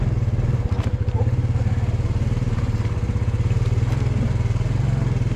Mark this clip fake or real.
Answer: fake